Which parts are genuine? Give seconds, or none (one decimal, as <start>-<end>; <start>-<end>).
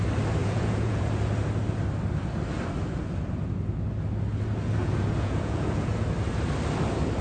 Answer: 0.0-0.4; 1.0-4.8; 5.9-7.2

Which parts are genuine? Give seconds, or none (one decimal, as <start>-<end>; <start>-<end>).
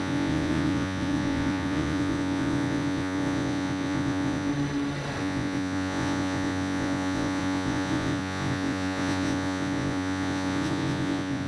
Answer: 4.5-5.2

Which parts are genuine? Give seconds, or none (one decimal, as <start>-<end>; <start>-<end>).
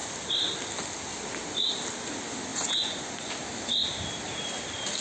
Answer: 0.0-2.5; 3.3-5.0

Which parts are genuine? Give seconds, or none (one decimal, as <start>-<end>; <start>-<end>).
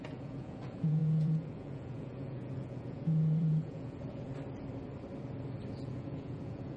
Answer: 4.3-5.7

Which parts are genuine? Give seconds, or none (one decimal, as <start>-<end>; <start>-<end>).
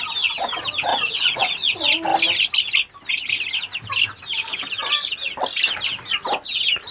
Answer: 0.0-0.9; 1.7-6.9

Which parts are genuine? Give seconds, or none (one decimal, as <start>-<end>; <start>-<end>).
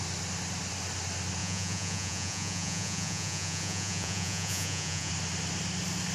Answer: 0.0-1.4; 5.1-6.1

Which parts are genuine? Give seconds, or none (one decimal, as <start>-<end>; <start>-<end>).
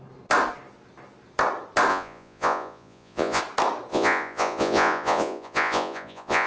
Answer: 0.0-1.9; 3.4-3.9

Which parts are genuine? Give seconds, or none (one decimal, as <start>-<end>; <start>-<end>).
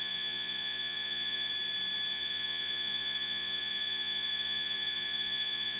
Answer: 1.5-2.1